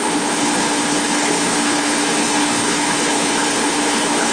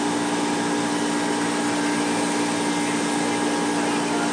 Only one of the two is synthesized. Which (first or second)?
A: first